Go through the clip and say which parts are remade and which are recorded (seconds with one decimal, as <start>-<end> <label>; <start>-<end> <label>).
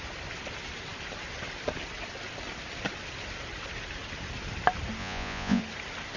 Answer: 0.0-5.0 recorded; 5.0-5.6 remade; 5.6-6.2 recorded